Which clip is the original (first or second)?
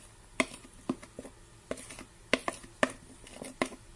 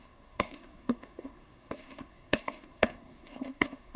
first